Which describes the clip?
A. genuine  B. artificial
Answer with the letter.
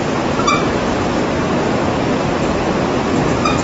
A